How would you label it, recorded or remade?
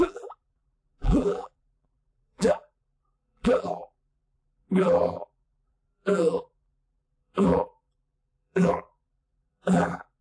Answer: remade